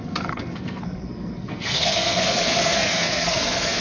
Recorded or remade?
remade